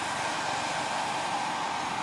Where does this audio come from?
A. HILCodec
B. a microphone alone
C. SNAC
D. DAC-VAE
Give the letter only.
B